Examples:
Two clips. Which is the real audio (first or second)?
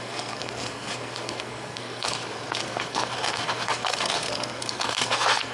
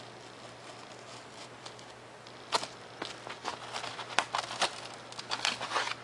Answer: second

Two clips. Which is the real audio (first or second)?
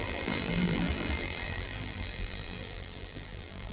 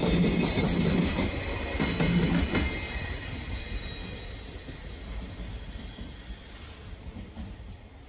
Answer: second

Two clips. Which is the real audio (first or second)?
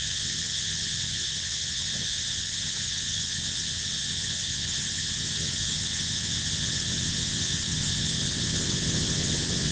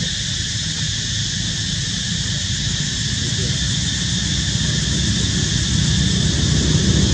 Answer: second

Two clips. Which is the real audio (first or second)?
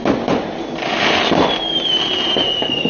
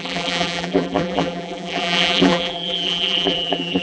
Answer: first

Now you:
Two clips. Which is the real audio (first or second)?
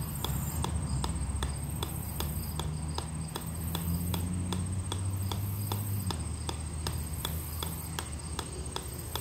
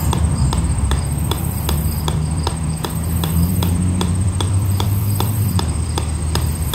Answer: first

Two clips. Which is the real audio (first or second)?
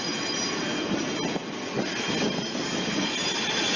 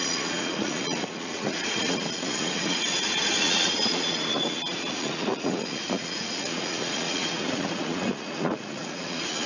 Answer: first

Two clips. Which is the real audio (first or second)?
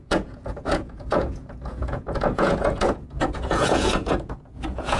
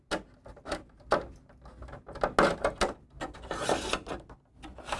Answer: second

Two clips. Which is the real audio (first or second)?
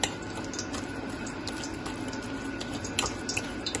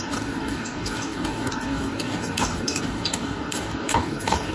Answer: first